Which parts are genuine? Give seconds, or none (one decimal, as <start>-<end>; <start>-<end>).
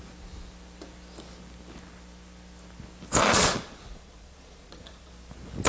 0.0-3.2; 5.1-5.7